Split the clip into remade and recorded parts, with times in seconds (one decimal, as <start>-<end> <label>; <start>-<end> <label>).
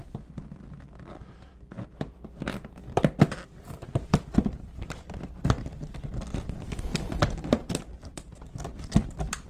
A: 0.0-9.5 remade